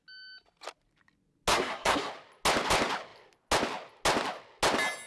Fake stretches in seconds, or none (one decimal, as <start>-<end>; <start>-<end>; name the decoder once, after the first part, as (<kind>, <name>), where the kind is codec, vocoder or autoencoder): 1.5-2.1 (codec, SNAC)